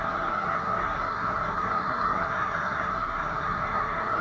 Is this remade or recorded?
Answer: remade